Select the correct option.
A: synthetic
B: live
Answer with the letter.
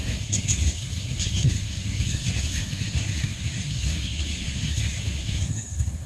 A